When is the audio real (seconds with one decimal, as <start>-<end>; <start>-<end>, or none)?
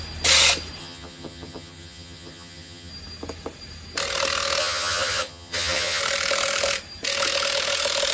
0.0-0.8; 2.9-4.6; 6.0-8.1